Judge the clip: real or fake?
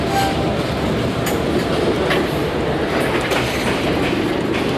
real